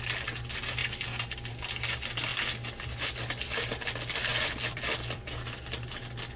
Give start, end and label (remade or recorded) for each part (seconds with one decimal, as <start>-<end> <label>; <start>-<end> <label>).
0.0-4.3 recorded; 4.3-5.2 remade; 5.2-6.4 recorded